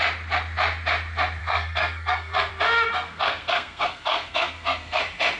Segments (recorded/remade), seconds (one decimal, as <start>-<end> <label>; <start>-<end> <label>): 0.0-1.4 recorded; 1.4-2.5 remade; 2.5-2.9 recorded; 2.9-5.0 remade; 5.0-5.4 recorded